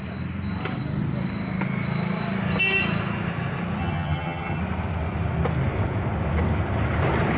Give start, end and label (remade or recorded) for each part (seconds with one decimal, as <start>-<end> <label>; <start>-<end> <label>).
0.0-3.8 recorded; 3.8-4.6 remade; 4.6-7.4 recorded